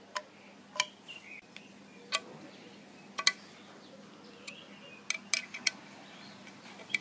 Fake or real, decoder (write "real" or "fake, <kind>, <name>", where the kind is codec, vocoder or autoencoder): real